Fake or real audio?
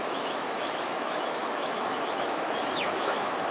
fake